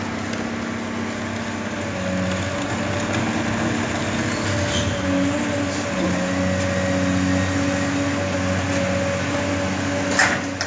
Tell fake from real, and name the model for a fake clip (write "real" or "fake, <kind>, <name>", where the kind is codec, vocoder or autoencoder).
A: real